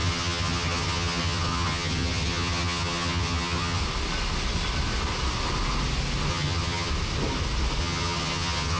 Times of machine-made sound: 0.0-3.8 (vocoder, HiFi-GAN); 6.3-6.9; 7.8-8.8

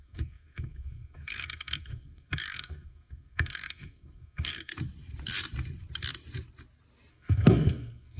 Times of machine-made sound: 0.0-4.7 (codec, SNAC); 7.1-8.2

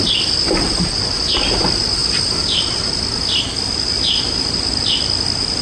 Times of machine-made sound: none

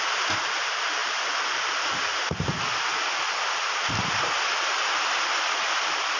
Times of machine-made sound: none

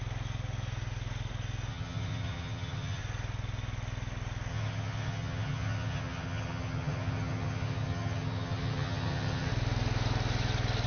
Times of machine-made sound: 1.7-3.0 (vocoder, HiFi-GAN); 4.5-9.5

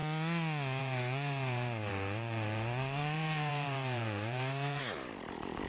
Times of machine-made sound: 0.8-5.7 (vocoder, BigVGAN v2)

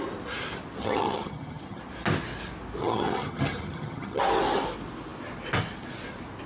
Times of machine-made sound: 0.8-1.8 (vocoder, HiFi-GAN); 2.8-4.2